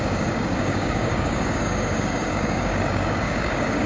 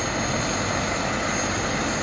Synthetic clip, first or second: first